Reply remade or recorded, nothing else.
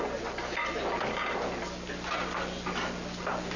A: recorded